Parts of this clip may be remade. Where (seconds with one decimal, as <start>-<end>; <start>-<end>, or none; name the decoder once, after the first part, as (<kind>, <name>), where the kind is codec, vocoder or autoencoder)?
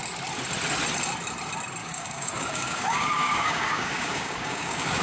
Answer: 1.8-5.0 (codec, DAC)